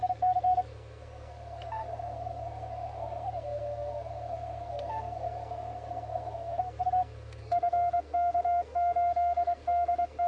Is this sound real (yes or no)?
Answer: no